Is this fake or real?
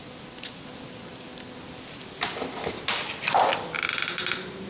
real